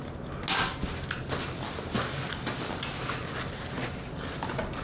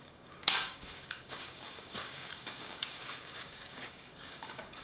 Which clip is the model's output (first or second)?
second